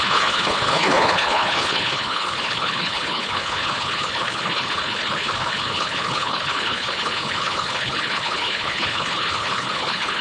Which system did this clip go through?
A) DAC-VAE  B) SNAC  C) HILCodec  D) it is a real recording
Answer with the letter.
C